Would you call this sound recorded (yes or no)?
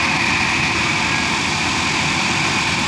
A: yes